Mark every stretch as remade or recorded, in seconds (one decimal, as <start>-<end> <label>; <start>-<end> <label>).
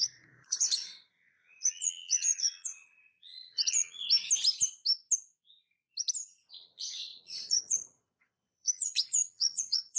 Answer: 0.0-4.0 remade; 4.0-6.5 recorded; 6.5-10.0 remade